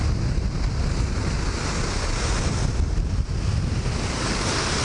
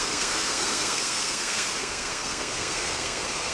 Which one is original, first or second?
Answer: first